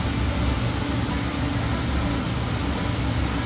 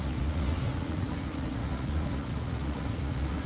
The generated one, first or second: second